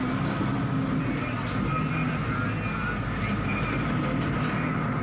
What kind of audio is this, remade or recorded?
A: recorded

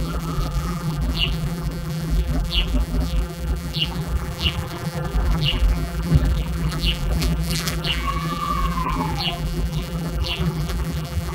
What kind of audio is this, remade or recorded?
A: remade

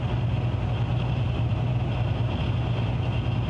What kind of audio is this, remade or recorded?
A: recorded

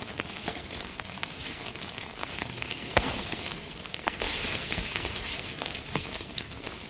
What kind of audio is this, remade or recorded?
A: remade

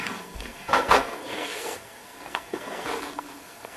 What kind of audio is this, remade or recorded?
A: remade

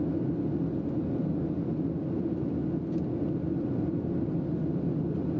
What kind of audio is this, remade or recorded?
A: recorded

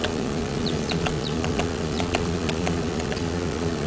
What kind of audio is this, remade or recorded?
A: remade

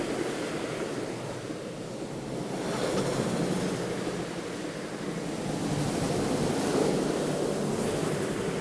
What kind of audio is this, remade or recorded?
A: recorded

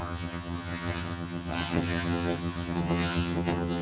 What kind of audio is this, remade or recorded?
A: remade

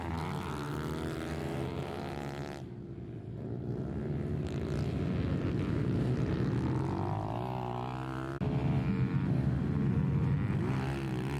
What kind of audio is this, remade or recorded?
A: recorded